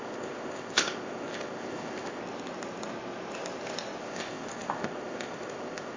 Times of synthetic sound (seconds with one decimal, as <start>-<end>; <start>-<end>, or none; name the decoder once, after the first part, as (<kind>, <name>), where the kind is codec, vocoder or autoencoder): 0.0-2.2 (codec, ZipCodec); 4.0-6.0